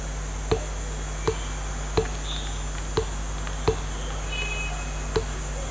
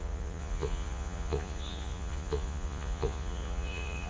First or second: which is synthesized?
second